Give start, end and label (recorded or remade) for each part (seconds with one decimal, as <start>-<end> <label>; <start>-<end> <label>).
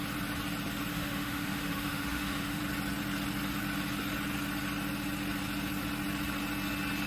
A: 0.0-0.9 recorded; 0.9-2.6 remade; 2.6-7.1 recorded